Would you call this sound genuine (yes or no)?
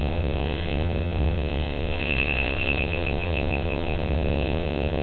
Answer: no